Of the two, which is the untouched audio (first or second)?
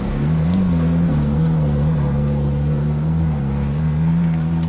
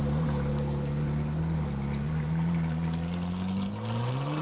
second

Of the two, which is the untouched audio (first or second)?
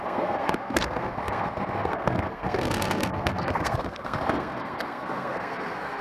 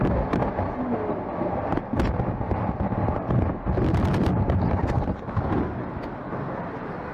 second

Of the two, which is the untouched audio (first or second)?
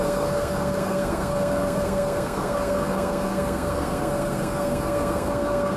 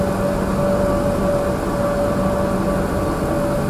second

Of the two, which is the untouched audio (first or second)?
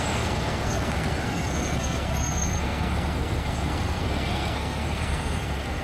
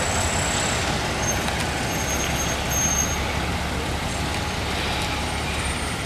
second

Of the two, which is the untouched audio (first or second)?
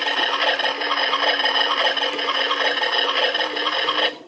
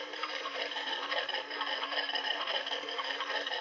first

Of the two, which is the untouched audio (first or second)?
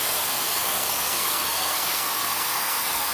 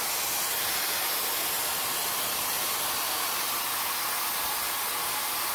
second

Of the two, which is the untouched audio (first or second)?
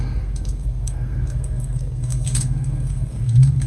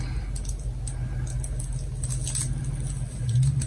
second